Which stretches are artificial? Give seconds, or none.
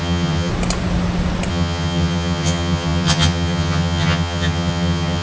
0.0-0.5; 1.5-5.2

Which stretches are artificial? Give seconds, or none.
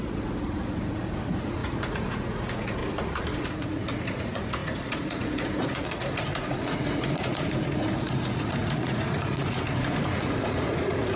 0.0-2.8; 3.4-11.2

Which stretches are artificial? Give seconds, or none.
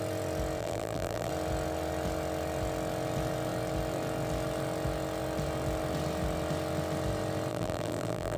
0.6-1.3; 7.5-8.4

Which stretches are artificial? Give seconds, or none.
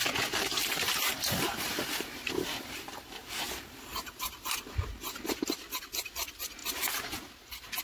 0.6-5.3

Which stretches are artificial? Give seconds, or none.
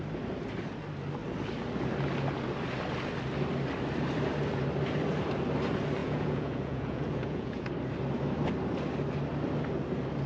6.0-7.7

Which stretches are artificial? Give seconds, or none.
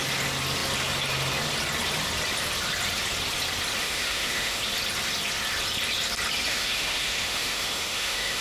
3.8-4.6; 6.5-8.4